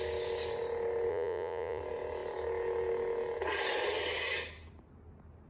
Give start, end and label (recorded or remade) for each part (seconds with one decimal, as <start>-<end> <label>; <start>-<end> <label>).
0.0-1.1 recorded; 1.1-1.8 remade; 1.8-5.5 recorded